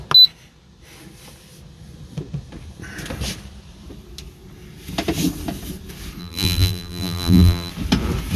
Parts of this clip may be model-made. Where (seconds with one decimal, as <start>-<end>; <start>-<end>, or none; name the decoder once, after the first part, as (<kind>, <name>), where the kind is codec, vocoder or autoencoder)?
6.2-7.7 (vocoder, BigVGAN v2)